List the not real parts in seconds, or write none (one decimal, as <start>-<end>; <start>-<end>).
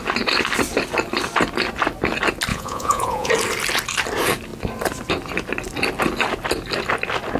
2.5-3.3